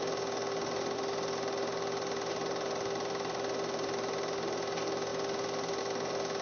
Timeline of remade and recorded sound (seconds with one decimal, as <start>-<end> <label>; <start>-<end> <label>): 0.0-6.4 recorded